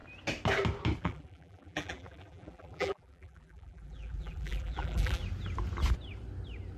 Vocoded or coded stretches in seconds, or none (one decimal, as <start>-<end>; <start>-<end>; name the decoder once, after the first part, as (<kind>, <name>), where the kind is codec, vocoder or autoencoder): 1.0-5.2 (vocoder, BigVGAN v2)